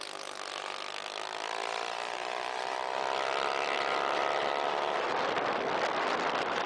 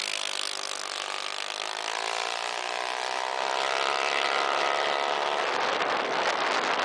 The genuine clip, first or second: second